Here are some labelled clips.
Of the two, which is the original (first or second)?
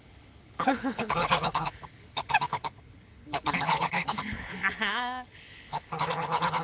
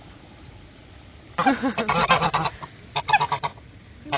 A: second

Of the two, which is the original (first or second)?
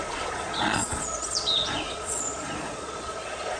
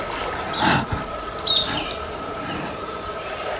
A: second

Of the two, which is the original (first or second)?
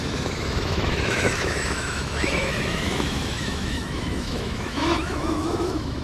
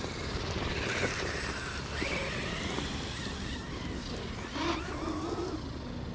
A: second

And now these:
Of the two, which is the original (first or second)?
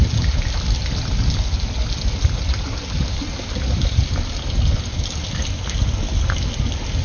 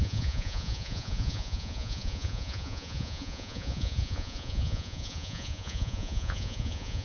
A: first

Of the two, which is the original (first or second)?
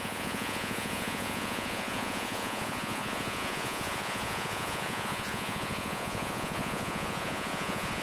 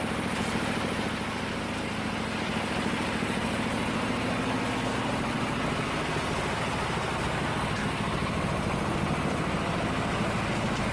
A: second